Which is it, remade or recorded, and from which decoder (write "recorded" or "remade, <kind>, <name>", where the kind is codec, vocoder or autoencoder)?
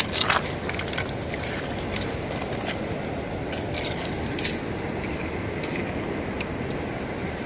recorded